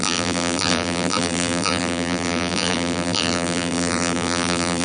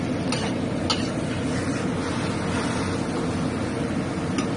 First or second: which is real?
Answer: second